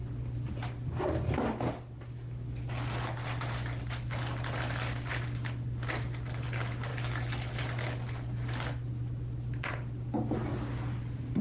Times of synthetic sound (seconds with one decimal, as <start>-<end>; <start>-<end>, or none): none